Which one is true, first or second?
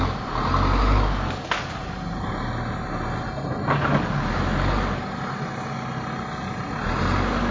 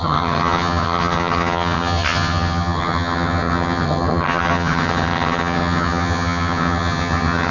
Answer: first